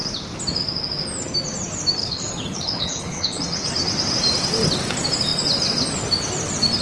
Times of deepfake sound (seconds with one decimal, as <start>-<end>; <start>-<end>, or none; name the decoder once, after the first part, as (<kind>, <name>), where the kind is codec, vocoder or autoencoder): 2.0-3.4 (codec, HILCodec)